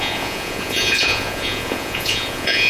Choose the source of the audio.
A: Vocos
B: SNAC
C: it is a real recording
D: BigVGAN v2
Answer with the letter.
A